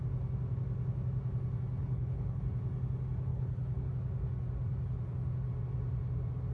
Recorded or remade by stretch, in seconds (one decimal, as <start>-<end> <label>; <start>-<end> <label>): 0.0-1.8 recorded; 1.8-2.4 remade; 2.4-3.3 recorded; 3.3-3.9 remade; 3.9-6.5 recorded